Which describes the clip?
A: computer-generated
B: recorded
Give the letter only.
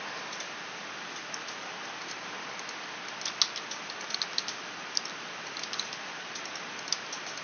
B